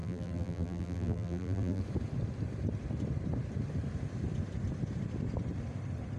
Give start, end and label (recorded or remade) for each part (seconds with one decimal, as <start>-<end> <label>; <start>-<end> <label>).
0.0-1.8 remade; 1.8-6.2 recorded